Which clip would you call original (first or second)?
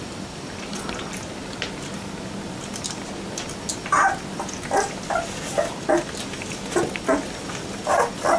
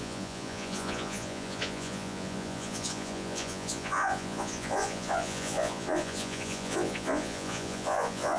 first